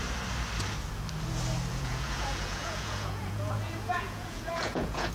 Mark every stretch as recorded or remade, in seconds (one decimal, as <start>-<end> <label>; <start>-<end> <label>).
0.0-1.7 recorded; 1.7-5.1 remade